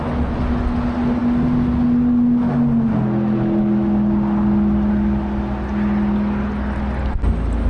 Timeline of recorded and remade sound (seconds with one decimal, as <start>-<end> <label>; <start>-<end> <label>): 0.0-7.7 recorded